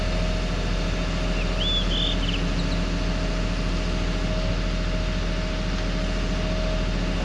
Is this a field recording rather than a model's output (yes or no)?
yes